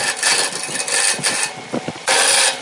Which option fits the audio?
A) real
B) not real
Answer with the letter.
A